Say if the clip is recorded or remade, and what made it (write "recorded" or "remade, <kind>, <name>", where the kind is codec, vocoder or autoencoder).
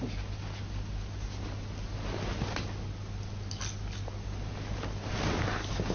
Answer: recorded